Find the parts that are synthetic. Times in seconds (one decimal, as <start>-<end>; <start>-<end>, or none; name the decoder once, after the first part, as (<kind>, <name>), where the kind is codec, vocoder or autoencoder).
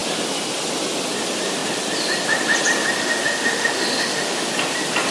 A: 3.0-4.5 (autoencoder, DAC-VAE)